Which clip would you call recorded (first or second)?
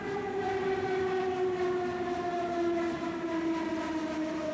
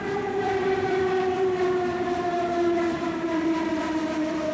first